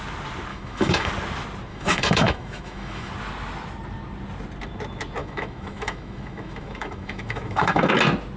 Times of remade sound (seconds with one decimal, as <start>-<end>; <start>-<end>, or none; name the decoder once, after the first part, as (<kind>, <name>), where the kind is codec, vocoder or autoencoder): 0.5-1.1 (autoencoder, DAC-VAE); 1.7-3.1; 5.2-7.9